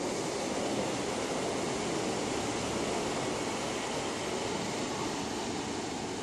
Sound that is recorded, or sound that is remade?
recorded